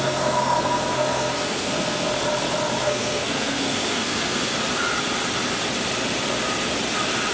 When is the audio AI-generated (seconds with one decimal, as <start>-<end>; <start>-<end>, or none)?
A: 0.0-2.1; 2.8-4.5